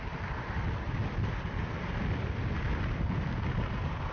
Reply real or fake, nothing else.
real